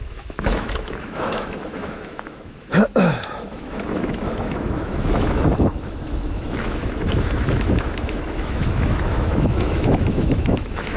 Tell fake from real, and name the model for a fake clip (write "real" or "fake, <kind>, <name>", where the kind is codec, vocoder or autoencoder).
fake, autoencoder, DAC-VAE